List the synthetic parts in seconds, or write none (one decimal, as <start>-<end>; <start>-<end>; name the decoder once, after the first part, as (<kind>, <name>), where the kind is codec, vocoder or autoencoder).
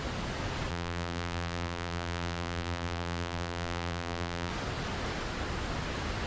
0.7-4.5 (vocoder, BigVGAN v2)